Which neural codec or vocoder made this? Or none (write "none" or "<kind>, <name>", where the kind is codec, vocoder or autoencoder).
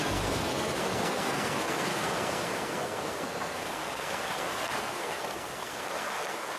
codec, SNAC